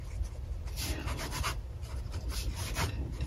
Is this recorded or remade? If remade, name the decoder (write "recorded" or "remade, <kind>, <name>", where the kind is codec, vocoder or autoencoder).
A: remade, vocoder, BigVGAN v2